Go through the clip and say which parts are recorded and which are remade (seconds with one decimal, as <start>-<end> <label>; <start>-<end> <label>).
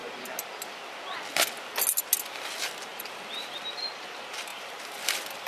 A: 0.0-2.9 recorded; 2.9-3.6 remade; 3.6-4.5 recorded; 4.5-5.5 remade